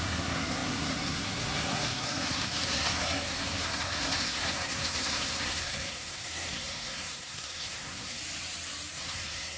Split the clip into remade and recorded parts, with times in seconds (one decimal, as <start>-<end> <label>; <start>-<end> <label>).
0.0-8.2 remade; 8.2-9.0 recorded; 9.0-9.6 remade